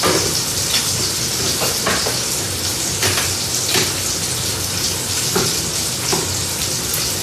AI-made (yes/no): no